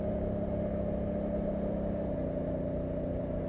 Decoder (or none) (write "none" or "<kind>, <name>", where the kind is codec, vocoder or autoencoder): none